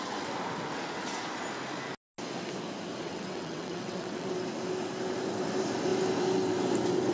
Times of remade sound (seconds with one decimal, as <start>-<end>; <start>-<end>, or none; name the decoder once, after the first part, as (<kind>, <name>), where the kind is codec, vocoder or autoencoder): 2.9-4.3 (vocoder, WaveNeXt)